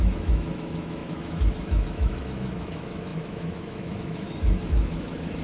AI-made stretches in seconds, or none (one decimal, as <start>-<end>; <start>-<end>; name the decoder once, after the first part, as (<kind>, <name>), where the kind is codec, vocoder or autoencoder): 0.0-5.4 (autoencoder, DAC-VAE)